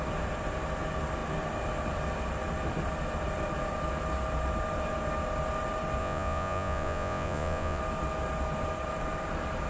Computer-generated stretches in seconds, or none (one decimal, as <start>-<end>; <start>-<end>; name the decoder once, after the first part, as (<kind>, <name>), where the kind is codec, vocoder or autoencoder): 6.0-7.8 (vocoder, Vocos)